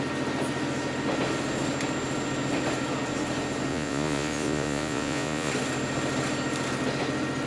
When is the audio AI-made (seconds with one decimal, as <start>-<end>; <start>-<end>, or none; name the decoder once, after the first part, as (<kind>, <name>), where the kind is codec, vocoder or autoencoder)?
3.7-5.5 (vocoder, Vocos)